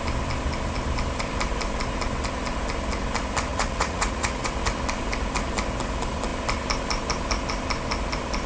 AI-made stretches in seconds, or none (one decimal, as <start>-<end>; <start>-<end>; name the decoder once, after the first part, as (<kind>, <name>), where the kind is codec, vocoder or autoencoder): 3.5-4.5 (vocoder, Vocos)